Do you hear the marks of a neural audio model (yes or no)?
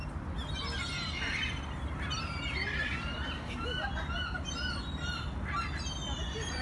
no